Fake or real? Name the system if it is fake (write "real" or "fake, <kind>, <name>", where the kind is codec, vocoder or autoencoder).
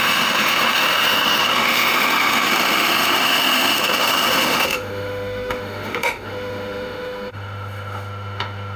fake, autoencoder, DAC-VAE